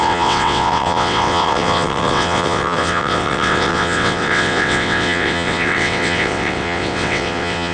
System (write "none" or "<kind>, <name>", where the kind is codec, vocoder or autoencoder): vocoder, WaveNeXt